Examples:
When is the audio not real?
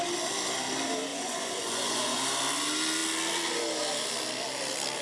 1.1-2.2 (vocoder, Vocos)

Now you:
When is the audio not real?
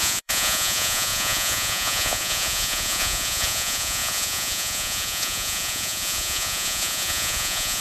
0.0-7.8 (vocoder, Vocos)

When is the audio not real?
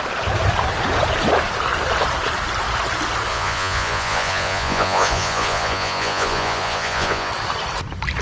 3.3-7.3 (vocoder, Vocos)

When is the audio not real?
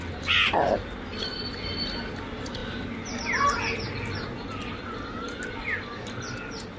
none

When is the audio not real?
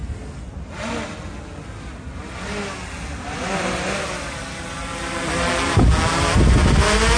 none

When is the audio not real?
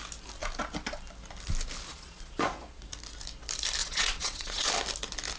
1.9-2.9 (vocoder, Vocos); 3.8-4.7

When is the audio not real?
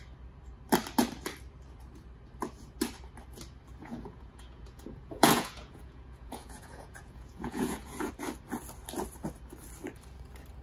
3.8-8.1 (vocoder, Vocos)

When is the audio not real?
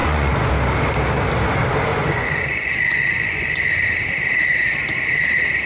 0.0-0.5 (vocoder, Vocos); 1.9-3.7